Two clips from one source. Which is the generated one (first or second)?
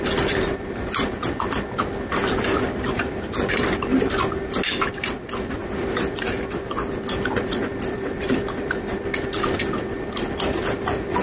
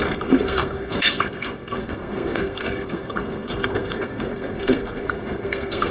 second